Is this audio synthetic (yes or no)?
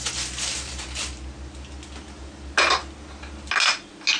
no